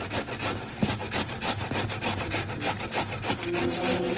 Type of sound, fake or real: real